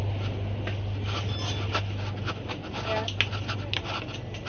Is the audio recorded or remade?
recorded